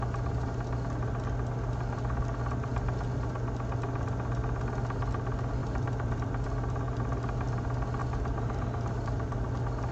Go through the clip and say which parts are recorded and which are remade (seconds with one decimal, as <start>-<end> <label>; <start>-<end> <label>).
0.0-5.6 recorded; 5.6-6.2 remade; 6.2-8.0 recorded; 8.0-9.5 remade; 9.5-9.9 recorded